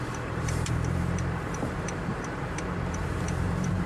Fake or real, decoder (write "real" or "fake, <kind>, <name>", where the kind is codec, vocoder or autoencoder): fake, vocoder, BigVGAN v2